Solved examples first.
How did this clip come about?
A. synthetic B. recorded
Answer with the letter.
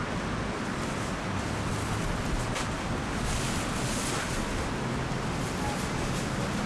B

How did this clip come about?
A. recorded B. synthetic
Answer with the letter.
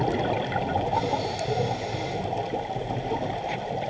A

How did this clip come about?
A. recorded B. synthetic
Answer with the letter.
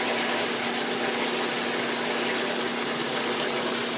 A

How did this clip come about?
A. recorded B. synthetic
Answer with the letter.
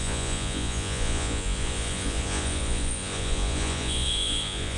B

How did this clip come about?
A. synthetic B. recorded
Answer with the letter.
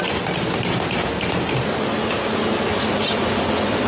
B